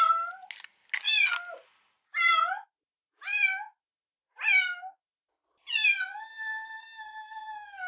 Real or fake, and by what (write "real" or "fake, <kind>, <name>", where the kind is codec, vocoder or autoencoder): real